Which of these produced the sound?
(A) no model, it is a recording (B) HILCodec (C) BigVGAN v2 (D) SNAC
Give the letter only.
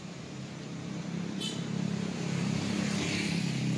C